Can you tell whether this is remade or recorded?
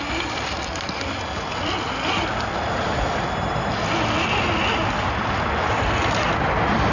recorded